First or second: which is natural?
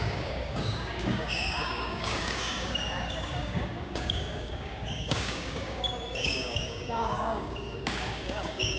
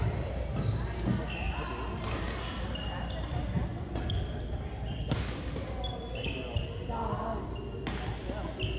second